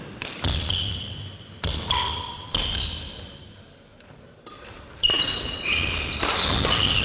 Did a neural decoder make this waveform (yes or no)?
no